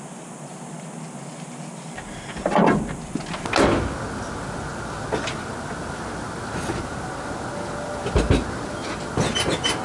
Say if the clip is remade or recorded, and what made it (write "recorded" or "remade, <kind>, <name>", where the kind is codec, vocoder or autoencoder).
recorded